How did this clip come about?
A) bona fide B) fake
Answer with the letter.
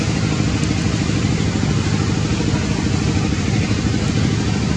A